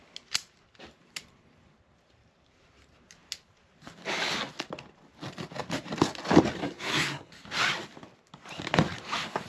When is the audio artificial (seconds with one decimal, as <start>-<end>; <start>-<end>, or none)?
6.6-7.3